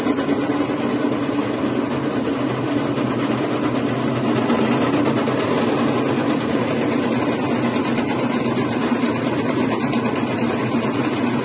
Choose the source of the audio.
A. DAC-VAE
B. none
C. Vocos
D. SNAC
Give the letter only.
B